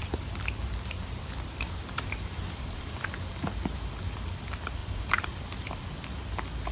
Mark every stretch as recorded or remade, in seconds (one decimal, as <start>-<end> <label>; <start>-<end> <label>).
0.0-3.3 remade; 3.3-4.8 recorded; 4.8-5.3 remade; 5.3-6.7 recorded